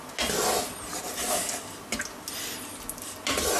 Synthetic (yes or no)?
no